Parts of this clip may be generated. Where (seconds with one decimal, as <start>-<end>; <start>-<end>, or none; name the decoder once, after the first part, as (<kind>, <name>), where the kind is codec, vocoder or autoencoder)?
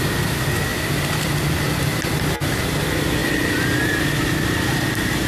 0.7-2.3 (vocoder, BigVGAN v2)